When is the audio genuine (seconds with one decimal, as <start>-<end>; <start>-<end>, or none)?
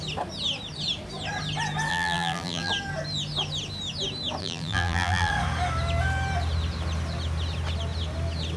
0.0-1.9; 2.7-4.4; 5.3-8.6